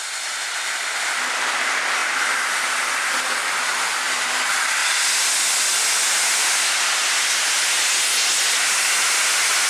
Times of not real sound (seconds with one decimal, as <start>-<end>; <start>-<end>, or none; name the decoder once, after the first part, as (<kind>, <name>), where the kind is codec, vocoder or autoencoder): none